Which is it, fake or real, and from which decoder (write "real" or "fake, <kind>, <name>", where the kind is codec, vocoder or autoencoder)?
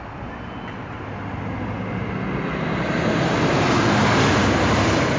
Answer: real